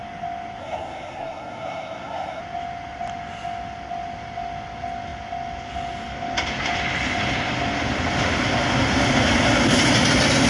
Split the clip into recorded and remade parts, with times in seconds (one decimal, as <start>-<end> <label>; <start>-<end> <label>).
0.0-0.6 recorded; 0.6-2.4 remade; 2.4-10.5 recorded